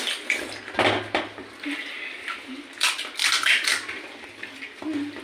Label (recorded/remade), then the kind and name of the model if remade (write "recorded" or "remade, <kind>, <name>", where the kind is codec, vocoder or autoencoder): recorded